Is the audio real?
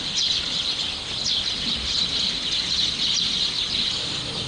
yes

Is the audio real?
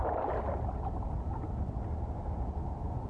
yes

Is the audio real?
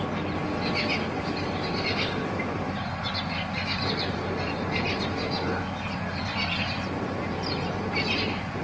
yes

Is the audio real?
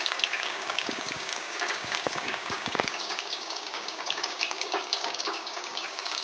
no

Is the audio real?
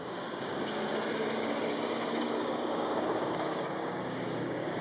no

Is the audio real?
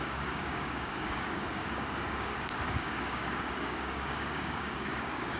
no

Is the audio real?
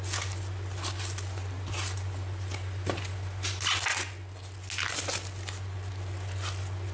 yes